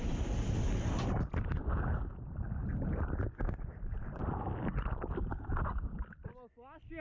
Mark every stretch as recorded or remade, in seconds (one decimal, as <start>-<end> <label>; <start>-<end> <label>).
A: 0.0-7.0 recorded